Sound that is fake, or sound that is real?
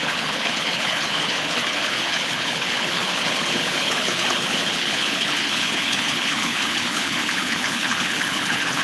fake